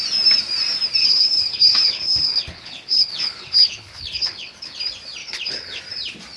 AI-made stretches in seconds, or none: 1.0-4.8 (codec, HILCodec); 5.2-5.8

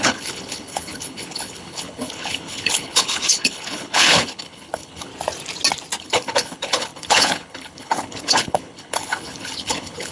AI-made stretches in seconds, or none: 0.0-5.1 (codec, HILCodec); 6.0-10.1

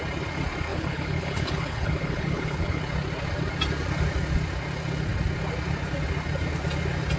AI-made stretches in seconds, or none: 0.7-2.8 (codec, HILCodec)

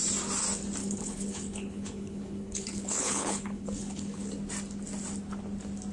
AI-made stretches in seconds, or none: 0.8-4.3 (codec, HILCodec)

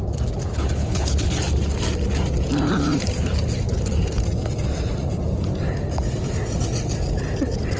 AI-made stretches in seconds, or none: 0.5-1.3 (codec, HILCodec)

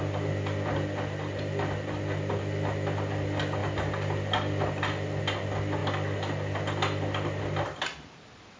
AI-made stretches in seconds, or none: none